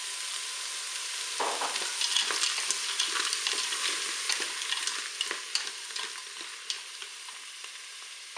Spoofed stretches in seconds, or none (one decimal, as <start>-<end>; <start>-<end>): none